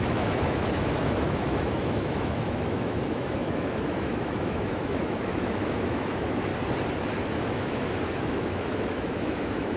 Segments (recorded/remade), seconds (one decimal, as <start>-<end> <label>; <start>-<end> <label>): 0.0-6.5 remade; 6.5-7.4 recorded; 7.4-9.8 remade